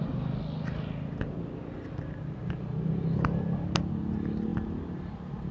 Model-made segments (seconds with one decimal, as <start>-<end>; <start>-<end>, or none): none